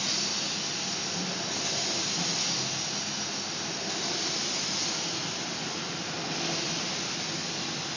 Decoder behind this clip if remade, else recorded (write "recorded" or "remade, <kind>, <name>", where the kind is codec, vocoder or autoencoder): recorded